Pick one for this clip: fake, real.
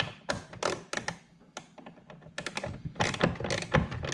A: real